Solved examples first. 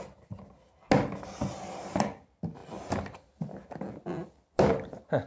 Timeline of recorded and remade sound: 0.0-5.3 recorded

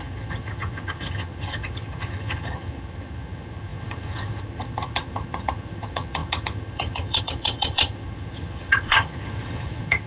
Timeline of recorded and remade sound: 0.0-10.1 remade

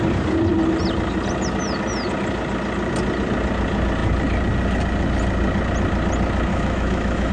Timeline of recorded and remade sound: 0.0-6.5 recorded; 6.5-7.3 remade

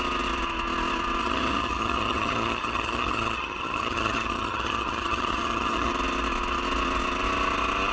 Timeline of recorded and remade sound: 0.0-1.2 recorded; 1.2-5.9 remade; 5.9-7.9 recorded

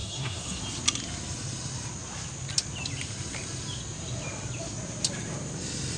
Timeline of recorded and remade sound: 0.0-0.6 remade; 0.6-6.0 recorded

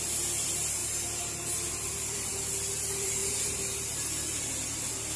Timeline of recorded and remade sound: 0.0-0.8 remade; 0.8-1.7 recorded; 1.7-3.2 remade; 3.2-4.1 recorded; 4.1-5.2 remade

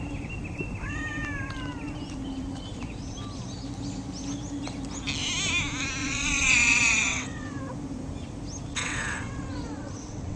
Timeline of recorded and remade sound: 0.0-6.0 recorded; 6.0-7.6 remade; 7.6-8.7 recorded; 8.7-10.4 remade

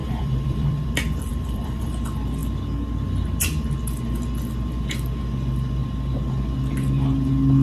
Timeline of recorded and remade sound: 0.0-0.9 remade; 0.9-1.3 recorded; 1.3-1.9 remade; 1.9-7.6 recorded